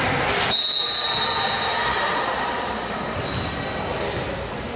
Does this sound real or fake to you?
real